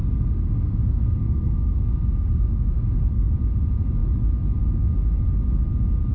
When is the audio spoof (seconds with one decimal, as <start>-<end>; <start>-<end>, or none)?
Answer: 0.0-3.3